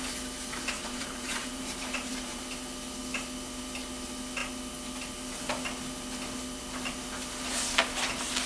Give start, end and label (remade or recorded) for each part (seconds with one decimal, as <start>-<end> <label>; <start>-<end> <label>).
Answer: 0.0-0.8 recorded; 0.8-2.4 remade; 2.4-8.5 recorded